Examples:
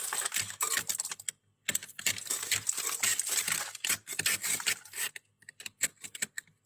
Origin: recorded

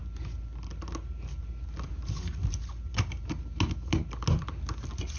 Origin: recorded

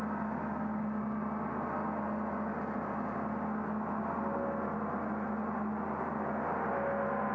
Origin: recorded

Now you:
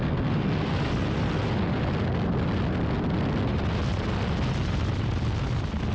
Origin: recorded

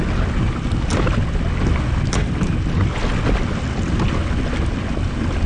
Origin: recorded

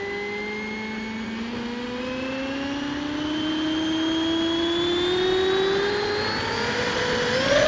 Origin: recorded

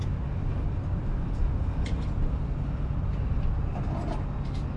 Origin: recorded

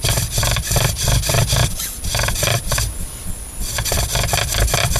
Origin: recorded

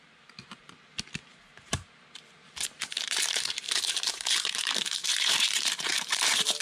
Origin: remade